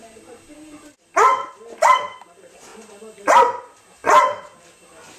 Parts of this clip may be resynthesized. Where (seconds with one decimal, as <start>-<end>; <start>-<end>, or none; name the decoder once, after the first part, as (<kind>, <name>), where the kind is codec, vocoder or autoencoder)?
none